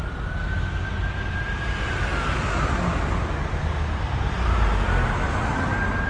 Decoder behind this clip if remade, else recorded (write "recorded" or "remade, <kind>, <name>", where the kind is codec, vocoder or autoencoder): recorded